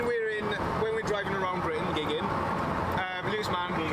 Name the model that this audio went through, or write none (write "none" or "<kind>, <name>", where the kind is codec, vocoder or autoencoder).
none